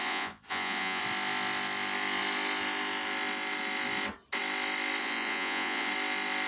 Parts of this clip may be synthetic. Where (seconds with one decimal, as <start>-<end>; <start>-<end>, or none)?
0.0-1.0; 5.0-5.9

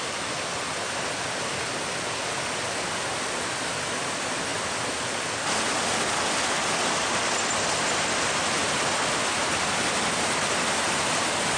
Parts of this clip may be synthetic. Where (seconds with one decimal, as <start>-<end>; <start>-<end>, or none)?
none